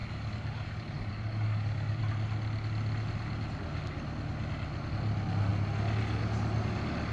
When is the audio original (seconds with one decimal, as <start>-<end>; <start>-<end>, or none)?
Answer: 2.0-7.1